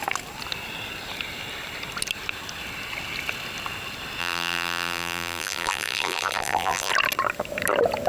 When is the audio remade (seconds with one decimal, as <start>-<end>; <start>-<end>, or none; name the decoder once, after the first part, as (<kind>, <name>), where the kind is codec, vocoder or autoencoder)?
4.2-6.9 (vocoder, BigVGAN v2)

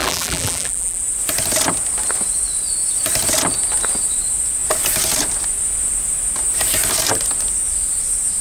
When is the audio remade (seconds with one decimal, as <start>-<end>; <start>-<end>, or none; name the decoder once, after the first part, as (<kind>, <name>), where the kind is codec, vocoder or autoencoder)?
0.0-1.0 (vocoder, BigVGAN v2)

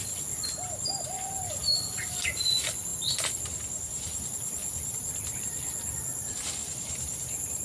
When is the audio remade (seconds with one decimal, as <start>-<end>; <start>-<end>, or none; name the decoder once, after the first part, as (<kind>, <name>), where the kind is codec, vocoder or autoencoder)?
6.6-7.6 (vocoder, BigVGAN v2)